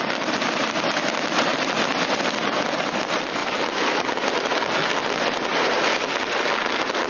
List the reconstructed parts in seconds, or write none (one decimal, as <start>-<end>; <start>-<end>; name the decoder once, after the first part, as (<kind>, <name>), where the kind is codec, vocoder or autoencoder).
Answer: 1.5-2.7 (vocoder, BigVGAN v2)